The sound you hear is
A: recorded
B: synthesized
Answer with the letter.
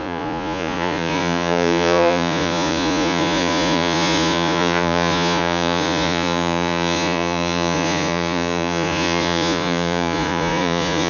B